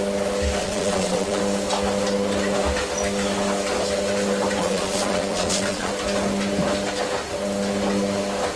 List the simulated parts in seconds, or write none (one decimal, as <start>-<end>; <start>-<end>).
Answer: 0.6-1.4; 4.6-5.9